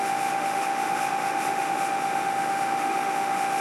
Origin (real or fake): fake